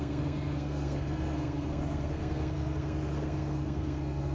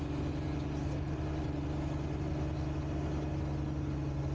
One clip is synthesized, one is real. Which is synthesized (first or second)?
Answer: first